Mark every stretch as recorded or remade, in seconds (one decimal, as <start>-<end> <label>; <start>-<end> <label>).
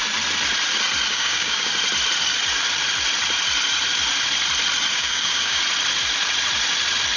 0.0-1.1 recorded; 1.1-1.7 remade; 1.7-4.9 recorded; 4.9-5.6 remade; 5.6-7.2 recorded